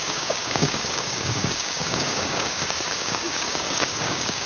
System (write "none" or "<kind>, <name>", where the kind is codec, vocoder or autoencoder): codec, DAC